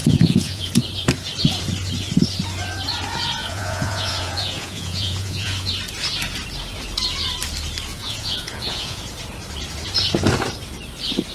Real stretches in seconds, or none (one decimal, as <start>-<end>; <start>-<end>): 0.7-3.4; 5.7-7.9; 9.0-11.3